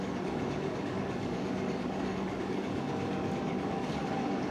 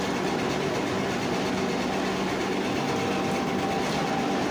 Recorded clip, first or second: second